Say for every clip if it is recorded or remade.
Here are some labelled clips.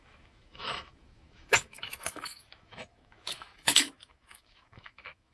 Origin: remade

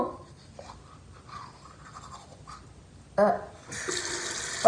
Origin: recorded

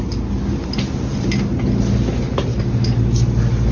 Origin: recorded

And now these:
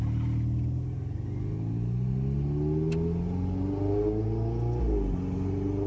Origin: recorded